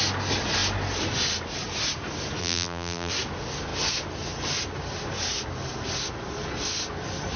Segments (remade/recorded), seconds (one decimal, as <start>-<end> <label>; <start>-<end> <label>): 0.0-2.4 recorded; 2.4-3.1 remade; 3.1-7.4 recorded